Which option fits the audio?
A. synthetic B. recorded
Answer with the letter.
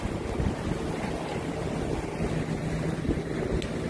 B